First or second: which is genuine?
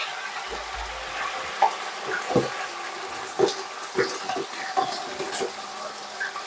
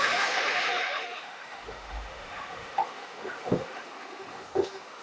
first